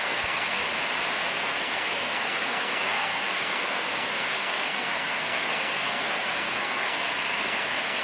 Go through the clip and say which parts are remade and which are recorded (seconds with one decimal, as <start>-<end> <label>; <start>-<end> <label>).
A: 0.0-0.6 remade; 0.6-1.2 recorded; 1.2-8.0 remade